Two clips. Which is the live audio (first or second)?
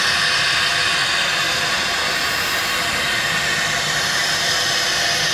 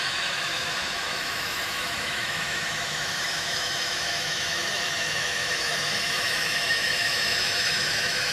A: first